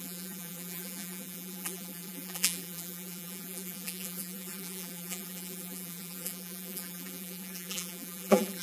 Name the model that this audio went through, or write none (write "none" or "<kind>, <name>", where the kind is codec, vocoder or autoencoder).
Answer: vocoder, BigVGAN v2